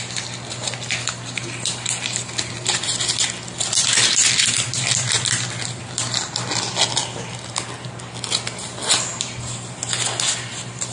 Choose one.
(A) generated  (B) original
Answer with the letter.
B